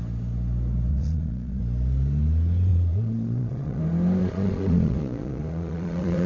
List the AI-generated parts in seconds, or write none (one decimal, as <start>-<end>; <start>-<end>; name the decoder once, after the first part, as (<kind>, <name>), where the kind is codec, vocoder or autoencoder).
0.9-1.6 (vocoder, Vocos); 2.7-3.8; 4.2-6.3